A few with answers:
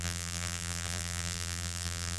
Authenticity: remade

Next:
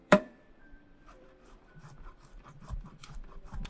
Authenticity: remade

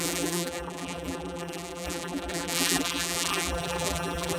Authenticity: remade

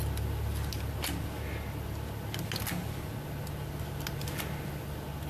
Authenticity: recorded